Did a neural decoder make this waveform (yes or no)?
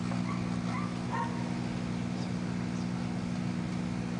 no